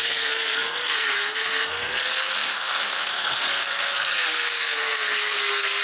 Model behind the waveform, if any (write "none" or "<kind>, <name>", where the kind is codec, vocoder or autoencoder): codec, SNAC